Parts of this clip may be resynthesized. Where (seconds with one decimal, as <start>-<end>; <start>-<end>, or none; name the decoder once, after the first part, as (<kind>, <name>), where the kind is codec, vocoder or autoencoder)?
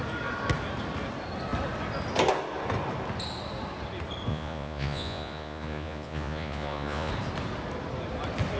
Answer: 4.3-7.1 (vocoder, Vocos)